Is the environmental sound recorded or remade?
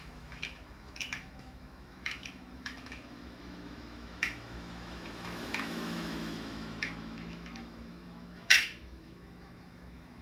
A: remade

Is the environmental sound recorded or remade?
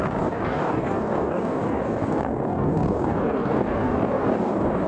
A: remade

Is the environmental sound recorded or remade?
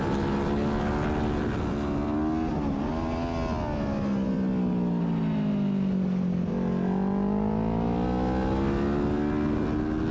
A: recorded